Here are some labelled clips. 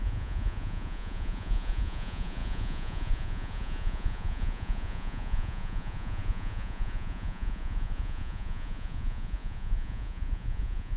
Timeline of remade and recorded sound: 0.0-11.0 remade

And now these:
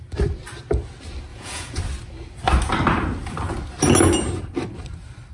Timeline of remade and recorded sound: 0.0-1.3 recorded; 1.3-1.8 remade; 1.8-5.3 recorded

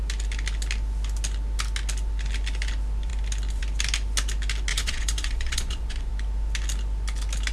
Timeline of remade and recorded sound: 0.0-4.7 recorded; 4.7-6.1 remade; 6.1-7.5 recorded

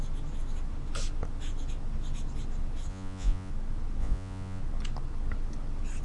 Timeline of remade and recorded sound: 0.0-2.9 recorded; 2.9-3.5 remade; 3.5-4.0 recorded; 4.0-4.6 remade; 4.6-6.0 recorded